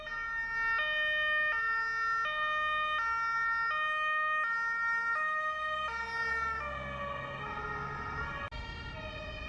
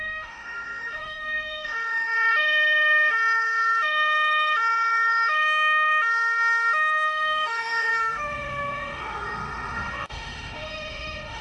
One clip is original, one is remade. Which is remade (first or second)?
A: second